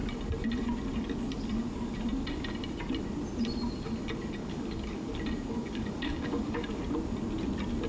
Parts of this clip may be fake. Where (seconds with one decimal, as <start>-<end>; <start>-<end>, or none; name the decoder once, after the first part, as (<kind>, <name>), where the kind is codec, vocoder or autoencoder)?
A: 4.4-5.1 (codec, DAC); 5.6-6.8